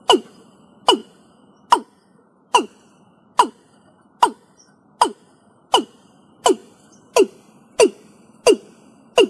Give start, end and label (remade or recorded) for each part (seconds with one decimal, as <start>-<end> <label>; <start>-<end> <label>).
0.0-9.3 recorded